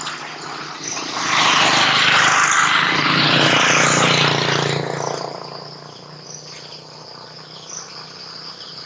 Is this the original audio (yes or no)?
yes